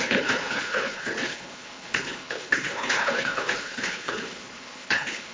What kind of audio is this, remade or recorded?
remade